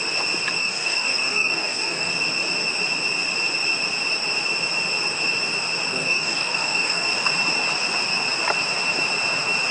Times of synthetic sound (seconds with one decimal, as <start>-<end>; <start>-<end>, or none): 0.6-2.1; 5.9-7.3